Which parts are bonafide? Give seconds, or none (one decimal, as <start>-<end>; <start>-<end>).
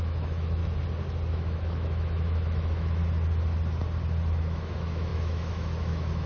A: 0.6-1.3; 3.0-4.3